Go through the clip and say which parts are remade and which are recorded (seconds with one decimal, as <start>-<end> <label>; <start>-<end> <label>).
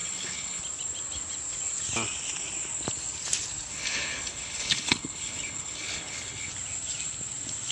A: 0.0-0.6 remade; 0.6-3.7 recorded; 3.7-6.5 remade; 6.5-7.7 recorded